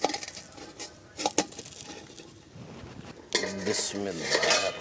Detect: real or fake real